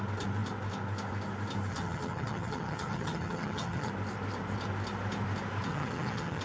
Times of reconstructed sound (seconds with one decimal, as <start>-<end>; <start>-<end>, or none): 1.7-3.9; 5.7-6.4